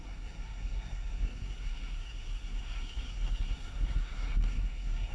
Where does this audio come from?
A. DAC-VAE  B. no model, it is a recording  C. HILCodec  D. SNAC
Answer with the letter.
D